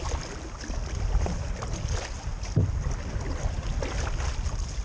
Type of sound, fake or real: real